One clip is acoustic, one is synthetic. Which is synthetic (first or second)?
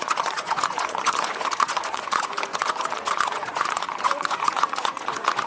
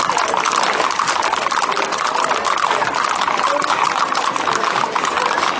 first